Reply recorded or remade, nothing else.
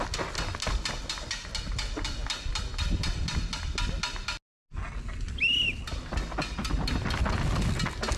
recorded